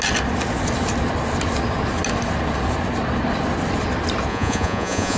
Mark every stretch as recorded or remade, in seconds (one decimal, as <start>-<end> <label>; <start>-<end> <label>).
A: 0.0-4.3 recorded; 4.3-5.2 remade